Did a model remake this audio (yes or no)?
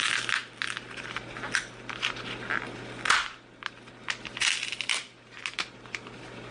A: no